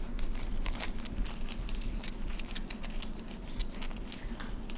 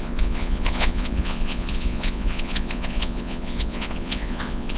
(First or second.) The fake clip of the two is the second